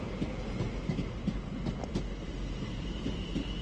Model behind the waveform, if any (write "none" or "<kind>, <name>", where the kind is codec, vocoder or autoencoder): none